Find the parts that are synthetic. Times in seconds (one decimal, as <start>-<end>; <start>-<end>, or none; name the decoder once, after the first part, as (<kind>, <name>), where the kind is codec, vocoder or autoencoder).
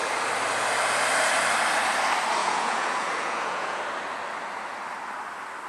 2.4-3.8 (vocoder, Vocos)